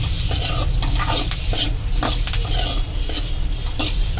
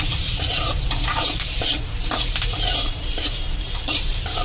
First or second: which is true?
first